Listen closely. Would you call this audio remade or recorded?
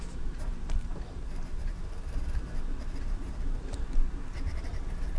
remade